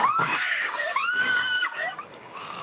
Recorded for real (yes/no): no